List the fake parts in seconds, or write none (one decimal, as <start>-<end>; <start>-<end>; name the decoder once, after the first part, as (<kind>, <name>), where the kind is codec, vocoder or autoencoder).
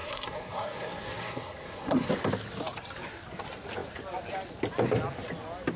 0.0-2.1 (codec, SNAC)